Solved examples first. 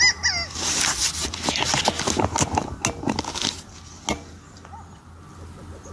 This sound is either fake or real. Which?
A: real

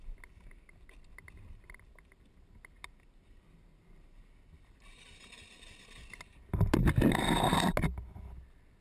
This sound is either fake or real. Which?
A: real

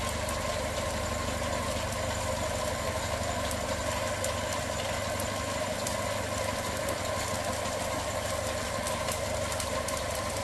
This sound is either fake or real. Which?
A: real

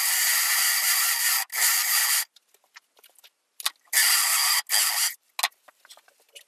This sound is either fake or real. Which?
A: real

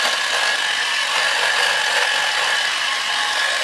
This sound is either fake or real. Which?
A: real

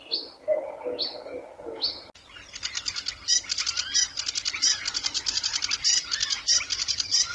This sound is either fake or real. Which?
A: real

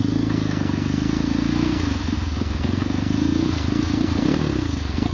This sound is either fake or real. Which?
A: fake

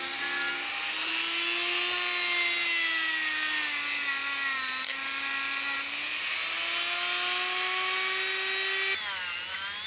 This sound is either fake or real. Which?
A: real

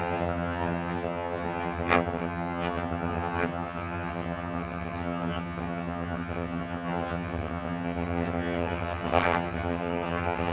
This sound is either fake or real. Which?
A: fake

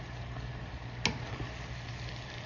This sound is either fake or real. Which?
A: real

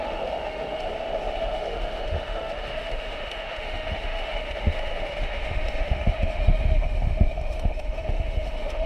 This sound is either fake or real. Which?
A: fake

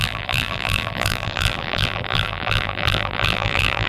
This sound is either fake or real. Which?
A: fake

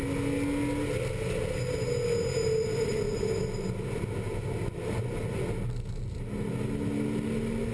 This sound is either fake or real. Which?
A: real